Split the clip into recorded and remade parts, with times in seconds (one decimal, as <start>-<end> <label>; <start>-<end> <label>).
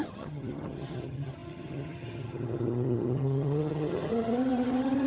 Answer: 0.0-5.1 remade